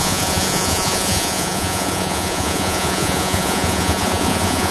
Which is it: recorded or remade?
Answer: remade